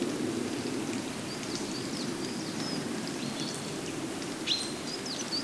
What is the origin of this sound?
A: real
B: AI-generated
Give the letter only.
A